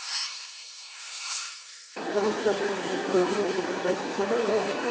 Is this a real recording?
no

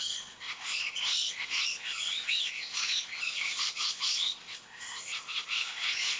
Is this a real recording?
no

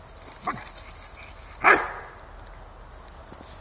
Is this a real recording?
yes